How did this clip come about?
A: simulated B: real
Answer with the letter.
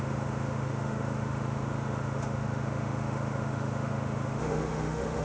A